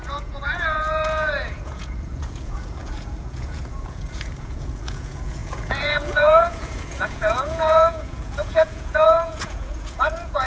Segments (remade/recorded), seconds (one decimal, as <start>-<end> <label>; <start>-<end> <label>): 0.0-10.5 remade